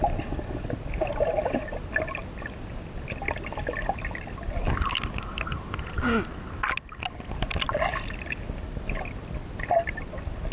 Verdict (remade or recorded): recorded